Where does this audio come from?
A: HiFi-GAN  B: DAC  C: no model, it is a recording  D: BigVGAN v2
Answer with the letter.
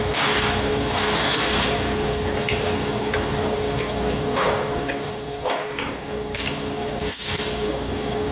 B